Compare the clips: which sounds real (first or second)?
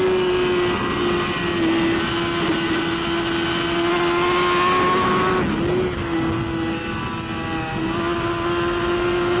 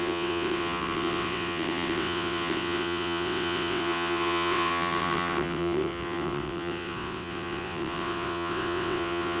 first